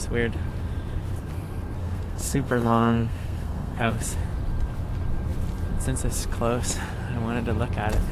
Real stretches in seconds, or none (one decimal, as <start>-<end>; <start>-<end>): 0.0-1.8; 3.9-8.1